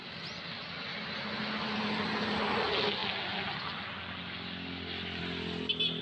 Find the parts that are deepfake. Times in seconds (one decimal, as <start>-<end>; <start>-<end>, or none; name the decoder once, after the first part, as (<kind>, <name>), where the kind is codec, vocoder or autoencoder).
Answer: none